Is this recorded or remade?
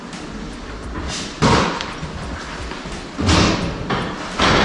recorded